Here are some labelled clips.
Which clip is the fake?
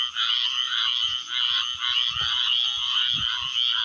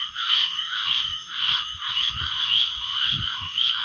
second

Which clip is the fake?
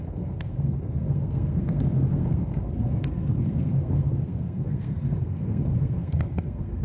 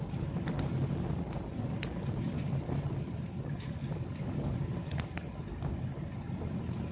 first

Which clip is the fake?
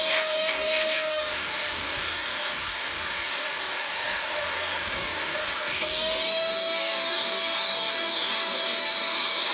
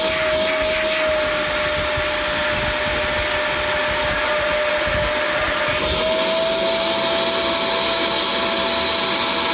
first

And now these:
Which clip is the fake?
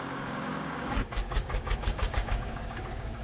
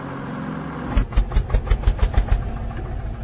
first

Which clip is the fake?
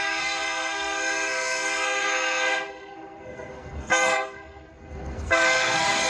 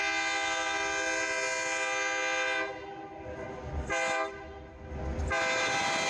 first